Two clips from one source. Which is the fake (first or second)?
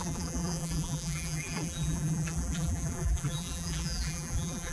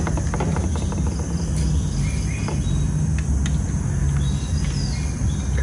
first